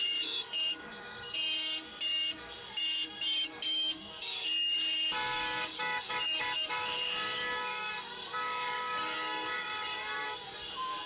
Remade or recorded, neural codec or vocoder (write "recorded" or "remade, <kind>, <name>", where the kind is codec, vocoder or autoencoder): remade, codec, DAC